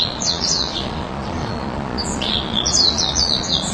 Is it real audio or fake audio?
fake